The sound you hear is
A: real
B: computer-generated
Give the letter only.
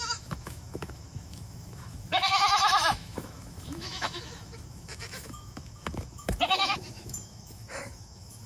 B